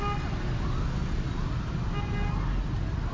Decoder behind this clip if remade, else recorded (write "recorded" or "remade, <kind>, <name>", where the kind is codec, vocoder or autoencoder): recorded